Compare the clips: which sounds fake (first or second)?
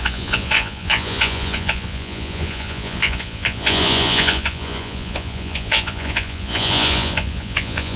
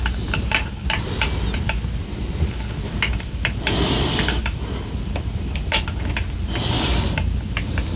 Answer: first